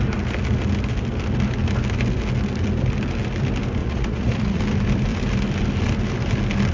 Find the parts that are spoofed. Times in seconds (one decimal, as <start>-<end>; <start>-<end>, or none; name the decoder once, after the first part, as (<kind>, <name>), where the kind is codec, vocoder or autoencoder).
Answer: 3.8-4.6 (vocoder, Vocos)